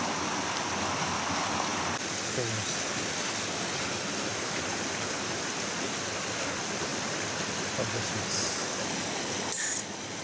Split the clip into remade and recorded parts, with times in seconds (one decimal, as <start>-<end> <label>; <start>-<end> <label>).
0.0-10.2 recorded